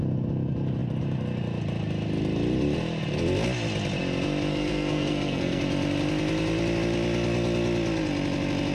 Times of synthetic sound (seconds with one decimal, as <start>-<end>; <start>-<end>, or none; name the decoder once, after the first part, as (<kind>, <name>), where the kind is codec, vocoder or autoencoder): 4.5-5.6 (codec, SNAC)